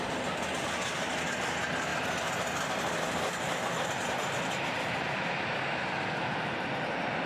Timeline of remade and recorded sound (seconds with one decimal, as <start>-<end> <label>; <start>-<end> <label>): 0.0-7.3 recorded